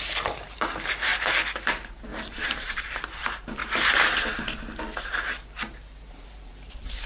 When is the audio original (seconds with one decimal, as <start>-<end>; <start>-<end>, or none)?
1.1-1.7; 3.6-6.1